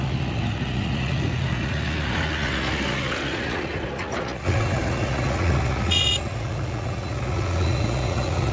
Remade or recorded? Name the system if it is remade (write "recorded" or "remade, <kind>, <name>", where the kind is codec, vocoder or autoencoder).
remade, vocoder, Vocos